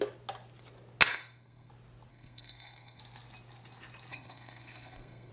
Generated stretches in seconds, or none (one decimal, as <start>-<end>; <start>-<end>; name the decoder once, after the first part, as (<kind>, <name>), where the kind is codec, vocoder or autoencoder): 1.1-1.7 (codec, SNAC); 2.1-3.0; 4.1-5.3